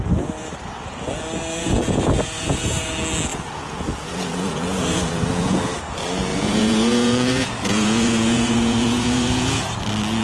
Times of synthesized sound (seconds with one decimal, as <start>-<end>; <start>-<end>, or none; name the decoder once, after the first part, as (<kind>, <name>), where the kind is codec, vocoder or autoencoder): 1.6-2.9 (vocoder, Vocos); 3.3-5.8; 6.3-9.7